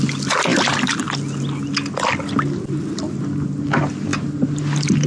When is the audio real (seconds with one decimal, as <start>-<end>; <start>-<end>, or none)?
0.0-5.1